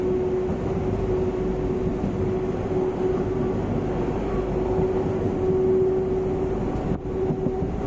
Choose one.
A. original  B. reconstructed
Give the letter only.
A